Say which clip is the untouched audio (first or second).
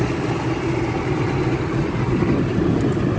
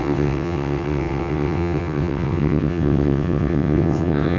first